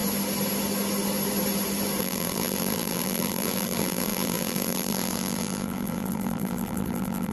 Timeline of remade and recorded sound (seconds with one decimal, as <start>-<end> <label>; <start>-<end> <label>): 0.0-2.0 recorded; 2.0-7.3 remade